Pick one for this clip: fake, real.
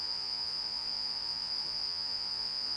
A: fake